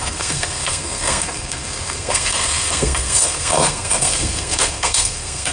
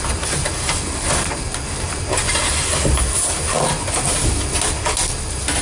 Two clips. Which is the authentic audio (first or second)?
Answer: second